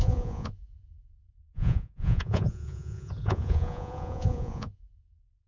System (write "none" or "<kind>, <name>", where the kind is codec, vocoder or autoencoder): vocoder, Vocos